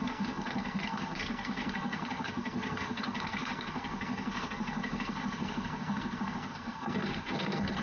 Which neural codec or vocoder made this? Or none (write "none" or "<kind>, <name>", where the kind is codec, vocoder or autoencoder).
codec, SNAC